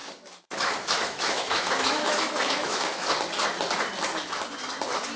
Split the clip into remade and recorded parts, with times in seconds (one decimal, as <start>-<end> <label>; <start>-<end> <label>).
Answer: 0.0-3.1 remade; 3.1-5.2 recorded